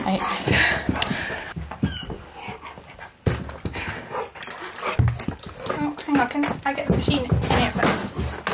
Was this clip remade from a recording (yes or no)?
no